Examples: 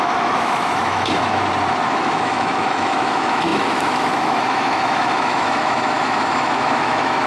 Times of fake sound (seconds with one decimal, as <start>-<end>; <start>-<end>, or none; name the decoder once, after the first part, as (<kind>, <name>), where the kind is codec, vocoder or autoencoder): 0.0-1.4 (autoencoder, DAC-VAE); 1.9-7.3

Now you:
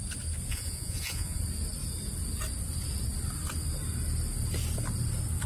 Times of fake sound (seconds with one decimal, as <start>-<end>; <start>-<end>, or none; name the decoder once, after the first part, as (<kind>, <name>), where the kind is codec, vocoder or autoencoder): 0.5-1.4 (vocoder, Vocos)

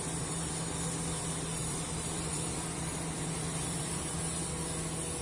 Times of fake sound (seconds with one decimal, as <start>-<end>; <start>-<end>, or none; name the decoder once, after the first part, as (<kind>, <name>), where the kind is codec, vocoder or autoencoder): 1.6-4.2 (vocoder, BigVGAN v2)